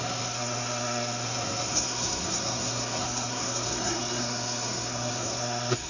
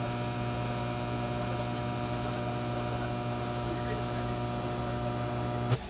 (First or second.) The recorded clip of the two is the second